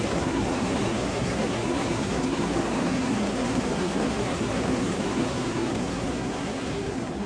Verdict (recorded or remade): remade